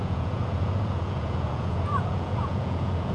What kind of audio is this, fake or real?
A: fake